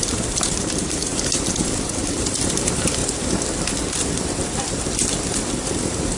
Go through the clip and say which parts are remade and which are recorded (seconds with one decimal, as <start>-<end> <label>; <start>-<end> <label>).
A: 0.0-3.0 remade; 3.0-5.7 recorded; 5.7-6.2 remade